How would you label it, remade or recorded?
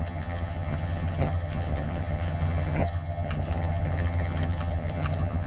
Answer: remade